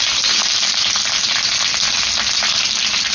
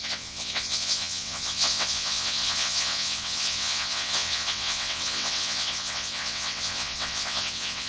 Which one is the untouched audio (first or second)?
first